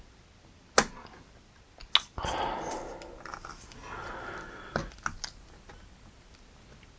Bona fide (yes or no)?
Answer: yes